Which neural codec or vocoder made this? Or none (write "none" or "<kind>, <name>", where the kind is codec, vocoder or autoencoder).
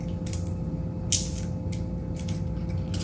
none